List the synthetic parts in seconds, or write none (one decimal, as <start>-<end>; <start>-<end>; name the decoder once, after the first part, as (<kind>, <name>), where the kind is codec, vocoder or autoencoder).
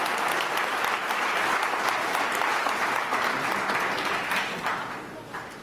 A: 0.7-3.0 (vocoder, BigVGAN v2)